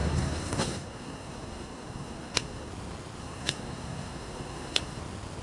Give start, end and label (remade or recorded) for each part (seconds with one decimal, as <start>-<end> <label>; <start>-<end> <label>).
0.0-2.7 remade; 2.7-3.2 recorded; 3.2-5.0 remade; 5.0-5.4 recorded